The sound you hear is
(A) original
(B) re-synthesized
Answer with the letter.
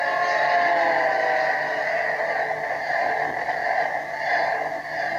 A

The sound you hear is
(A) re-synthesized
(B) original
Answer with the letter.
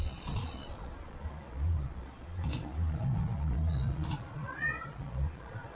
A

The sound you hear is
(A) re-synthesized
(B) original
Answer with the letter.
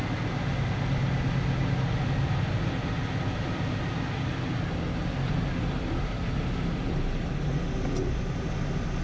B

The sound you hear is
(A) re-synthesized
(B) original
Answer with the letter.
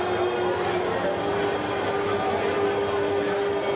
B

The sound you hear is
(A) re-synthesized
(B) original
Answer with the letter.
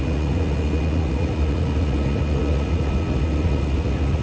A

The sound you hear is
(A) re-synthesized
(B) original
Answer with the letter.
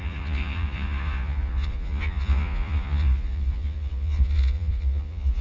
A